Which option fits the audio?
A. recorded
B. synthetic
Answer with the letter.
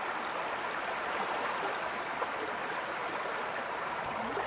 A